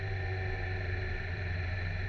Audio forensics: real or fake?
fake